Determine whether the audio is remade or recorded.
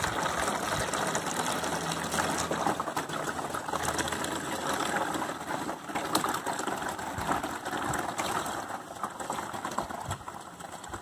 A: recorded